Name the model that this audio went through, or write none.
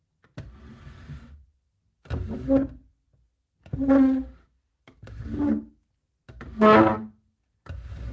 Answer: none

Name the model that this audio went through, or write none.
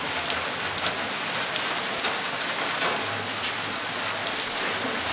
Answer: none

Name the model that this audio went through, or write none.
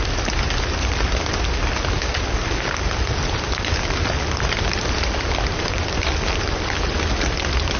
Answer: none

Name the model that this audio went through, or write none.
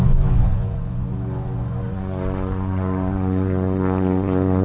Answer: vocoder, Vocos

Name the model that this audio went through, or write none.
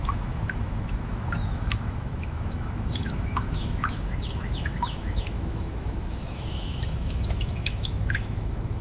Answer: autoencoder, DAC-VAE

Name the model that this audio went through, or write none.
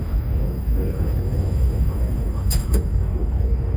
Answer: codec, DAC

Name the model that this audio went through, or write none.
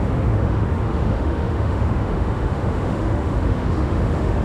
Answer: autoencoder, DAC-VAE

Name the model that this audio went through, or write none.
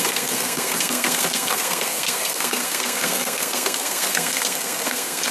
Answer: codec, SNAC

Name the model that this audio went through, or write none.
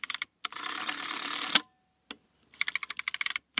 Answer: none